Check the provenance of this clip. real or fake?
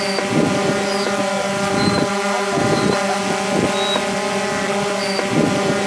real